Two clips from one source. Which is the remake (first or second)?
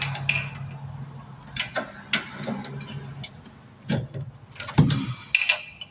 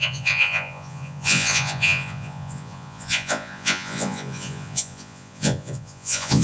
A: second